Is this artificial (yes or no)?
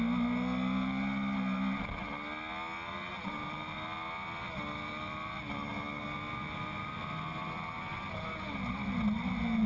no